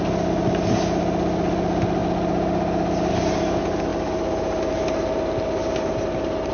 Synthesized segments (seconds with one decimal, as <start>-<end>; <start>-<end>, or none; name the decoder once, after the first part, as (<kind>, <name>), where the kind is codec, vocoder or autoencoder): none